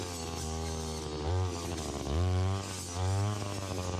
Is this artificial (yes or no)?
no